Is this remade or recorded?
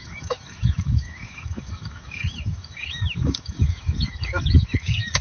remade